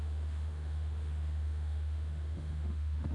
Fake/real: fake